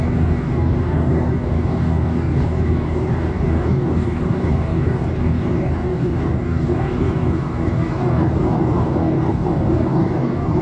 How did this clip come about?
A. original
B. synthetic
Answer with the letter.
B